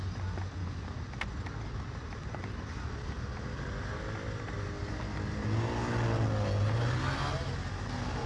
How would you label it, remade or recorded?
recorded